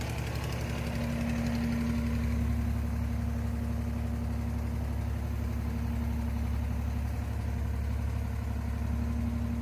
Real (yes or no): yes